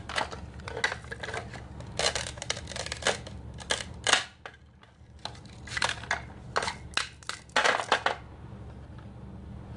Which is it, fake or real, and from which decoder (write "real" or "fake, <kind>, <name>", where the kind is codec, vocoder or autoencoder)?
real